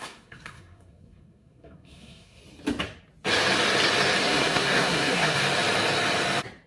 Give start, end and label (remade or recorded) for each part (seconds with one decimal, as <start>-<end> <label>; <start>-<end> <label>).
0.0-2.4 remade; 2.4-4.2 recorded; 4.2-5.4 remade; 5.4-6.7 recorded